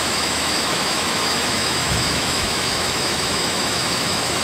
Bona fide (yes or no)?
no